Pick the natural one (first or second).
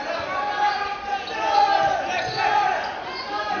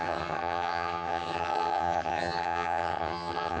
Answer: first